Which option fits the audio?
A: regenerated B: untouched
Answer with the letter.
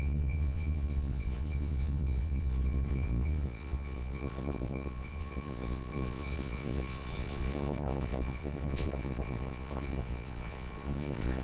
A